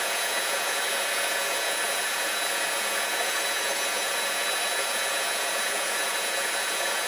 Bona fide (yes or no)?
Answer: no